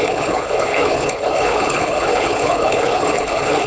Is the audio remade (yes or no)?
yes